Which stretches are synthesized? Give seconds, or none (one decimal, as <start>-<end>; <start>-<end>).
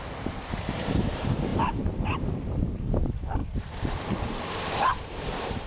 0.0-3.4; 3.9-5.7